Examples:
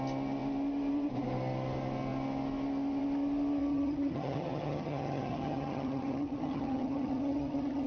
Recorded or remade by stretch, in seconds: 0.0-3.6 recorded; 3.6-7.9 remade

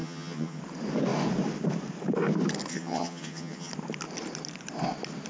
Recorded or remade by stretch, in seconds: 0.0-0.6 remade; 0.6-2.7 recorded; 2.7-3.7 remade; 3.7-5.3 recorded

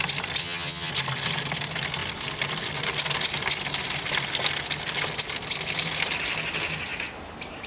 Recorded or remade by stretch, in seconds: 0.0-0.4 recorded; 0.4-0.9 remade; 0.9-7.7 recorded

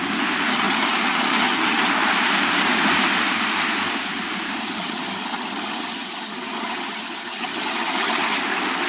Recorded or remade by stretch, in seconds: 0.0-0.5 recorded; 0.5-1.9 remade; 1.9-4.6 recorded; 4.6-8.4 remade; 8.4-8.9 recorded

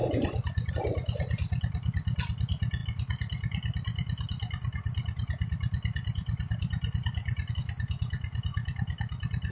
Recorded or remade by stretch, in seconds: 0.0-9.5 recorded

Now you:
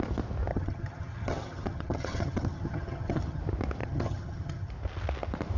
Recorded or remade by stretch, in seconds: 0.0-0.5 recorded; 0.5-3.4 remade; 3.4-3.8 recorded; 3.8-4.7 remade; 4.7-5.6 recorded